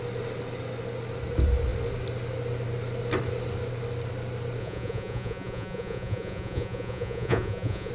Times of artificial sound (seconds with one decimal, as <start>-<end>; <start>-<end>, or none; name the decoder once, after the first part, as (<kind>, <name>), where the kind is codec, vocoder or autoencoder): 4.6-7.9 (vocoder, Vocos)